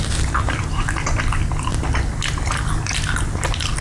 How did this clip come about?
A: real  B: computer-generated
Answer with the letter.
A